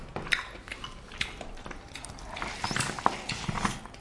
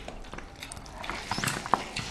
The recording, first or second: first